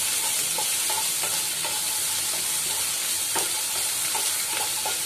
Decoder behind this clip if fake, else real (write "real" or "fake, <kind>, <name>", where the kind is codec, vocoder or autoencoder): real